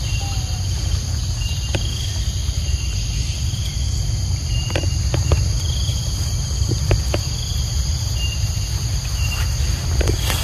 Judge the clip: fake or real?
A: real